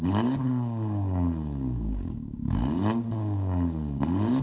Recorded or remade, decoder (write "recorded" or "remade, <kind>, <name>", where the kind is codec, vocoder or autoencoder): remade, codec, DAC